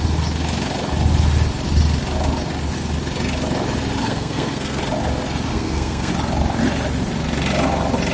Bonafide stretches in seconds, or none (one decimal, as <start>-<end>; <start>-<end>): 0.0-4.0; 4.8-5.5; 6.1-8.1